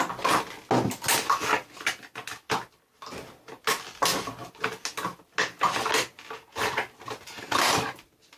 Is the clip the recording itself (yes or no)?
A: yes